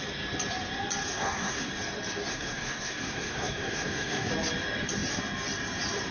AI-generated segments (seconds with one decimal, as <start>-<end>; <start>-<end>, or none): 1.1-1.7; 2.3-4.3